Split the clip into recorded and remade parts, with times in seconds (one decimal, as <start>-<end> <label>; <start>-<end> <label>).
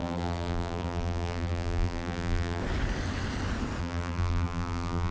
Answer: 0.0-2.6 remade; 2.6-3.8 recorded; 3.8-5.1 remade